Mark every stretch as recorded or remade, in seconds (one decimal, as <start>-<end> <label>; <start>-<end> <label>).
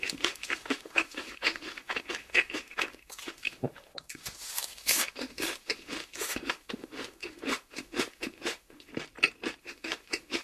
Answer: 0.0-8.9 remade; 8.9-9.6 recorded; 9.6-10.4 remade